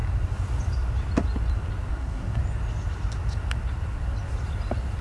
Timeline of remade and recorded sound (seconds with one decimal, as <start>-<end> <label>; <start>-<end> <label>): 0.0-1.9 recorded; 1.9-2.4 remade; 2.4-5.0 recorded